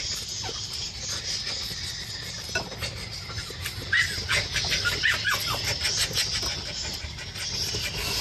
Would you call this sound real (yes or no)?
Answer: yes